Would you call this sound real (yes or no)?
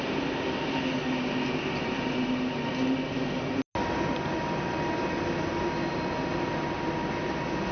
yes